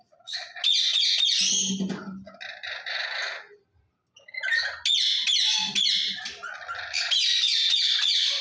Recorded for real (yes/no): yes